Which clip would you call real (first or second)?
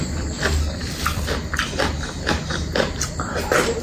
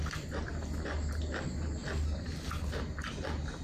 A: second